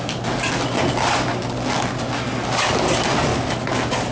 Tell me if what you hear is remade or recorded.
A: recorded